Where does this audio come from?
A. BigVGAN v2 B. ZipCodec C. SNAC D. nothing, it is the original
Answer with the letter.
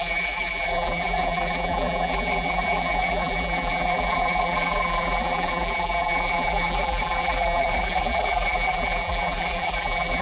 A